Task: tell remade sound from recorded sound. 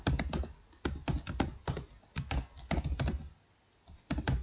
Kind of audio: recorded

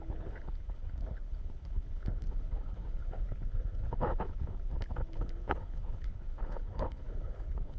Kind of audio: remade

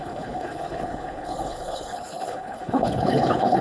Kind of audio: remade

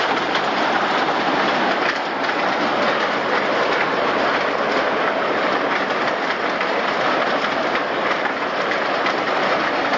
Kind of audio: recorded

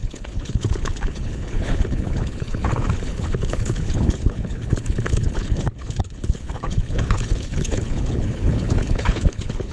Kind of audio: remade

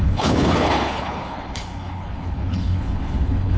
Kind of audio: remade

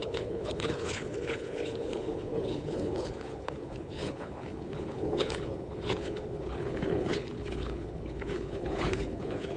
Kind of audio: remade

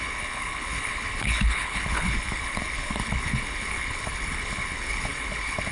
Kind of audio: remade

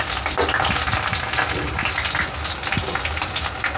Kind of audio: recorded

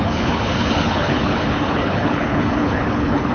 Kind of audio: remade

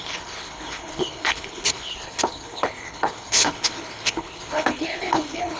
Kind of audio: remade